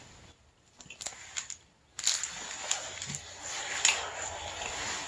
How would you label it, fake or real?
real